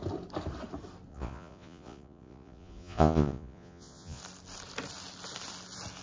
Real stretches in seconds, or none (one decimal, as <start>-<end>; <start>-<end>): 0.0-1.1; 4.2-6.0

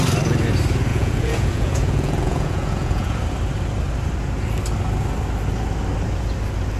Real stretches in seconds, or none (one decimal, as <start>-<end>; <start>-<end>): 0.0-0.9; 3.2-6.8

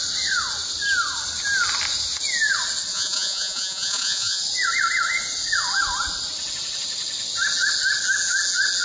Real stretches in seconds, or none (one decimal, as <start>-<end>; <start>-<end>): 0.0-2.9; 4.4-8.8

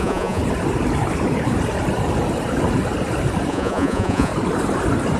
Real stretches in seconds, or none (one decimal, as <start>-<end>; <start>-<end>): 0.4-3.5; 4.3-5.2